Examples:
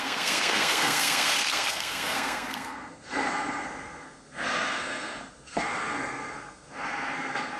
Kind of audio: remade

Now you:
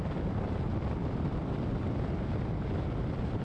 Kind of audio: remade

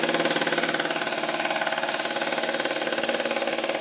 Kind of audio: recorded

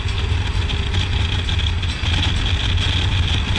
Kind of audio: recorded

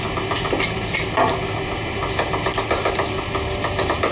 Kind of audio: recorded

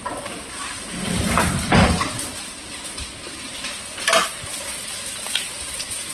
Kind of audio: recorded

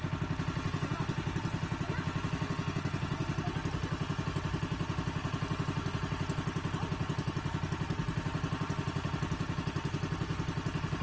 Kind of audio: recorded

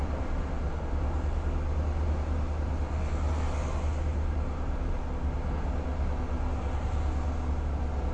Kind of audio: recorded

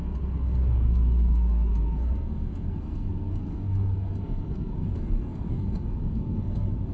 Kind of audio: remade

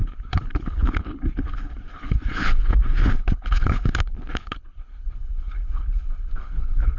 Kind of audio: remade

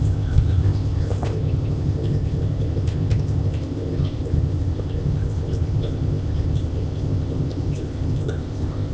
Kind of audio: remade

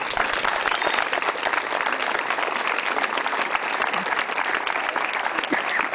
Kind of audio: recorded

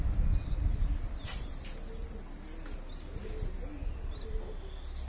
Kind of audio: recorded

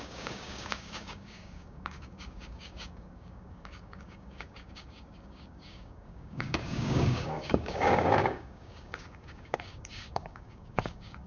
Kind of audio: remade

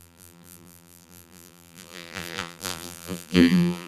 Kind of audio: remade